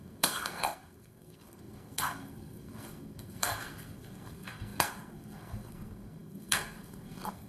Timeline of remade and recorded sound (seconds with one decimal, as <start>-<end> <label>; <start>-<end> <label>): 0.0-7.5 remade